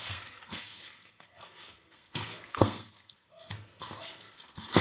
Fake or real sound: fake